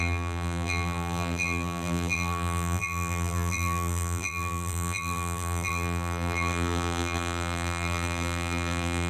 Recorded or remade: remade